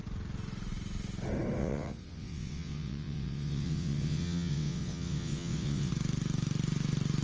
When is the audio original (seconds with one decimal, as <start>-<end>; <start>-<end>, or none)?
0.0-1.6; 5.9-7.2